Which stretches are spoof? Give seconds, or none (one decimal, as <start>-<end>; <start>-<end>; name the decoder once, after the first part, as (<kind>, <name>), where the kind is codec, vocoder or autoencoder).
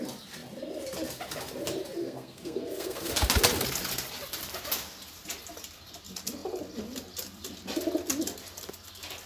2.0-3.1 (codec, SNAC)